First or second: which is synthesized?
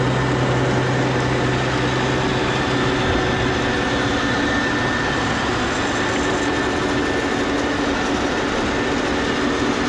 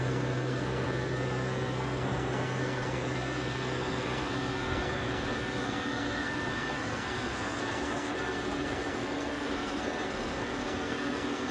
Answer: second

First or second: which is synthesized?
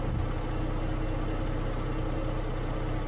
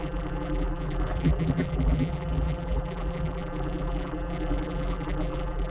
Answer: second